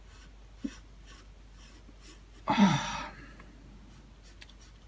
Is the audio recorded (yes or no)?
yes